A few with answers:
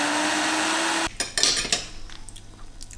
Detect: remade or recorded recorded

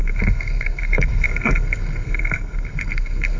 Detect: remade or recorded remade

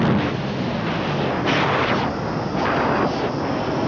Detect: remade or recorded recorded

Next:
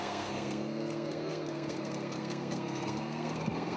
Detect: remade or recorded remade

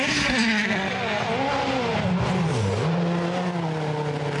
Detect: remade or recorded recorded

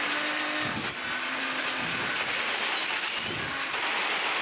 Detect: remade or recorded recorded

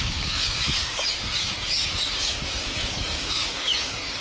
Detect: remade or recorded remade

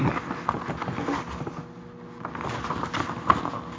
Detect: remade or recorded recorded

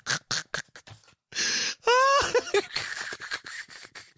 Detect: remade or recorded recorded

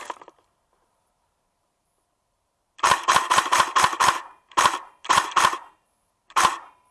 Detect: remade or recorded remade